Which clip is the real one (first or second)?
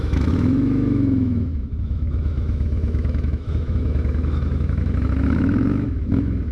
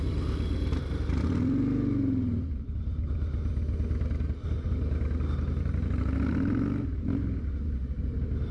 second